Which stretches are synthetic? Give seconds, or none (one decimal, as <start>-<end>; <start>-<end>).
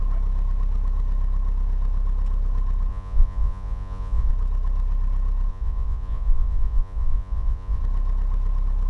2.9-4.3; 5.5-7.8